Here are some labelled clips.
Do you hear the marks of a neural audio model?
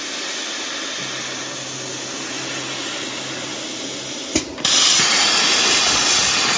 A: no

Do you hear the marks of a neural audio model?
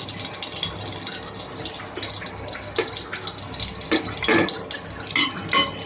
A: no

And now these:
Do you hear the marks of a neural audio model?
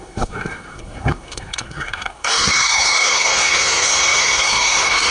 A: yes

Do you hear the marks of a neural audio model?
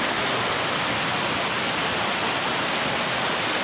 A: no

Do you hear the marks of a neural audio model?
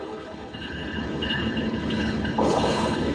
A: yes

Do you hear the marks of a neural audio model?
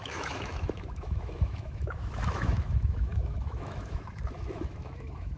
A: yes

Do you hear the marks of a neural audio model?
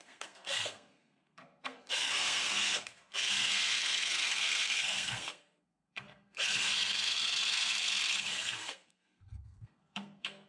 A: yes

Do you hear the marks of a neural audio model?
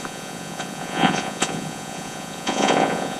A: yes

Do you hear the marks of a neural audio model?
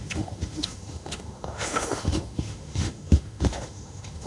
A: yes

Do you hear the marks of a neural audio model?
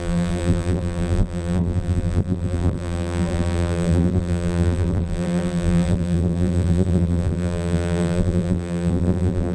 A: yes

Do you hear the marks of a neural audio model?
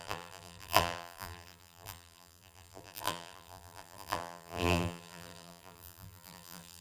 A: yes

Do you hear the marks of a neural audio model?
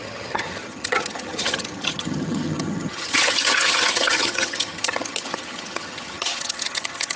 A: yes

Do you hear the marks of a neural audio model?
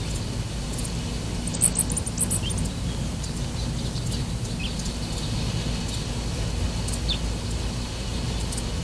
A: no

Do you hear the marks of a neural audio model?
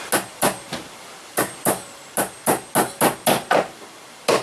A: no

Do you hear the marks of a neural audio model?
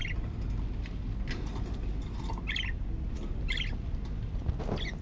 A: no